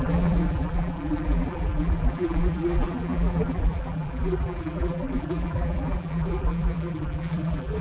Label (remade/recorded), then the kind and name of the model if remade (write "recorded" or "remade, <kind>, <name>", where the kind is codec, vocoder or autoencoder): remade, vocoder, BigVGAN v2